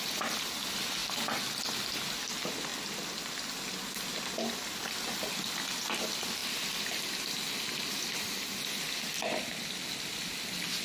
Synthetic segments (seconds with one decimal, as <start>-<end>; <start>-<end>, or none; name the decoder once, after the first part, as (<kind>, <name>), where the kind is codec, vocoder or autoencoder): none